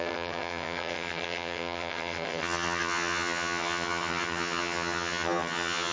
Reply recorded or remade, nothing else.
remade